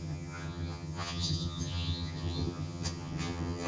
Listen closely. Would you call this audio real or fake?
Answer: fake